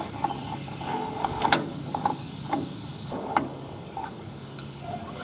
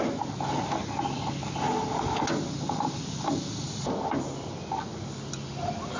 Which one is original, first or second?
second